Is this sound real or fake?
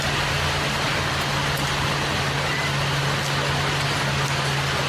real